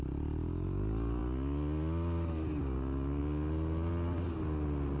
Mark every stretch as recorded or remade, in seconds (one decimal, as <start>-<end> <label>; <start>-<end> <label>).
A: 0.0-5.0 recorded

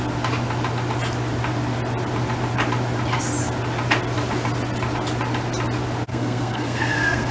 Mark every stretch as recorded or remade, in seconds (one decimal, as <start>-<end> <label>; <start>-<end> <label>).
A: 0.0-6.1 recorded; 6.1-7.3 remade